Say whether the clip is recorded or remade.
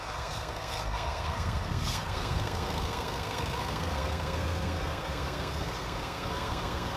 remade